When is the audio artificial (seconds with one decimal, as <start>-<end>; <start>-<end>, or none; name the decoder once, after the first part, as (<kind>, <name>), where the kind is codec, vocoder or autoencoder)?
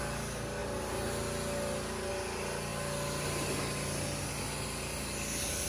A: none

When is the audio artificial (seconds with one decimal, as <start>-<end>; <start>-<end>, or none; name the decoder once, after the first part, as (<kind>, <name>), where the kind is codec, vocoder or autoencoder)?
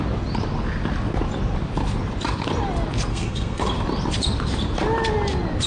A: 3.1-3.7 (codec, SNAC)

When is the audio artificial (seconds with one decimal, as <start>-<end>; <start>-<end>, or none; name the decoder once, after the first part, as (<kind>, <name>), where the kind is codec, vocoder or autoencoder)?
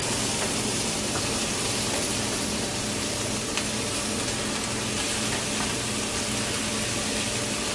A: none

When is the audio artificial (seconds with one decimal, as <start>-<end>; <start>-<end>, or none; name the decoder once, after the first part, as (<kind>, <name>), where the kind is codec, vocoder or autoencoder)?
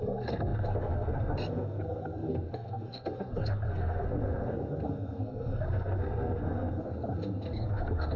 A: 0.0-8.2 (codec, SNAC)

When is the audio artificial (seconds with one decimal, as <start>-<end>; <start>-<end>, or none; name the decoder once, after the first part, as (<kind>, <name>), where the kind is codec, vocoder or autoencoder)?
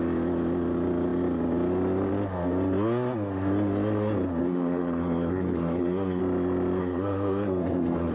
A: 4.4-6.2 (codec, SNAC); 6.8-8.1